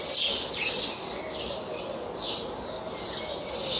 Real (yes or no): yes